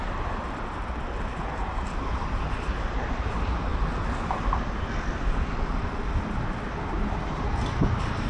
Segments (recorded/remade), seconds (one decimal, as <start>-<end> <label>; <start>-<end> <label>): 0.0-8.3 recorded